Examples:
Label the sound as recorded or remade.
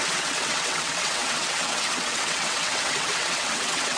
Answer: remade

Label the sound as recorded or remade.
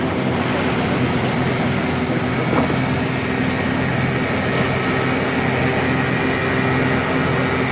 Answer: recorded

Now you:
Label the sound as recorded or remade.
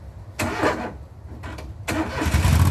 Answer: recorded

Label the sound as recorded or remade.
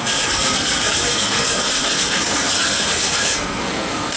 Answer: remade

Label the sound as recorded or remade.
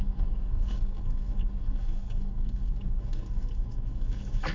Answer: remade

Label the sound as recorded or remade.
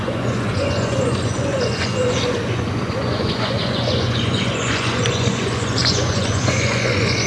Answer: remade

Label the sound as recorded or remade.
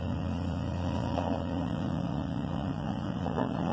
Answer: remade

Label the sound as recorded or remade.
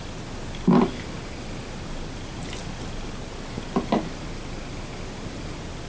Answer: recorded